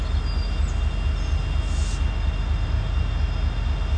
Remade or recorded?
recorded